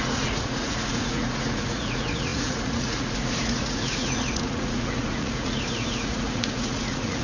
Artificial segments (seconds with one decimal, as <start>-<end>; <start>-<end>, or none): 0.0-7.2